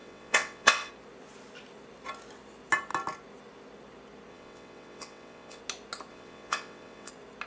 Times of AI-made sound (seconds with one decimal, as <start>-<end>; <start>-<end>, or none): 0.0-0.9; 4.3-5.6; 6.1-7.1